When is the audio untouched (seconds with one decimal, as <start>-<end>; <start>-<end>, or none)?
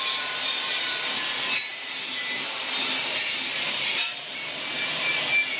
0.0-1.7; 5.1-5.6